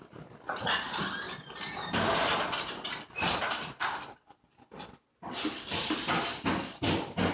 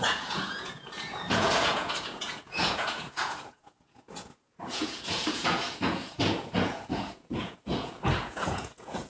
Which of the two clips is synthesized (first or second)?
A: second